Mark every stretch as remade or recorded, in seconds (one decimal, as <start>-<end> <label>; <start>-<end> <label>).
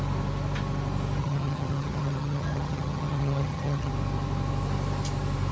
0.0-1.2 recorded; 1.2-3.9 remade; 3.9-5.5 recorded